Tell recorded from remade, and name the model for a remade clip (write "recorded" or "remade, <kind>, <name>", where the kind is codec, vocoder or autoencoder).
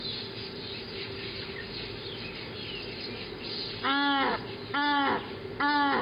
recorded